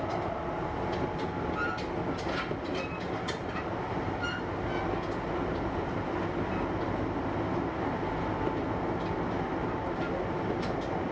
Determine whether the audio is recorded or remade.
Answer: recorded